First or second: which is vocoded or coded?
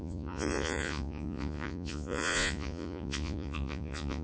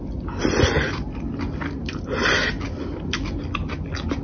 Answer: first